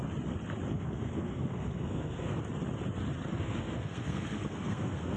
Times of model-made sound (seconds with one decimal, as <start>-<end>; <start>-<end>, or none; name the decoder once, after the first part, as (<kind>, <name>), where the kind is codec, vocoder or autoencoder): 0.7-2.4 (codec, SNAC); 3.3-5.2